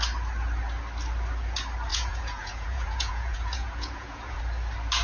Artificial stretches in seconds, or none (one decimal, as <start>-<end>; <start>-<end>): 1.9-4.4